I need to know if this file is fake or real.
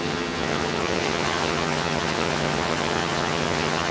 fake